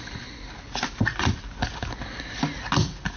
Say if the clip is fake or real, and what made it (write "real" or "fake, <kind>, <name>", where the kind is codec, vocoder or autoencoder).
real